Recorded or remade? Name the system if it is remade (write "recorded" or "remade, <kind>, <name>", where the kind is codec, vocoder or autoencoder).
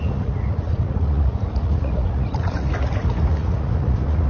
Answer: remade, vocoder, Vocos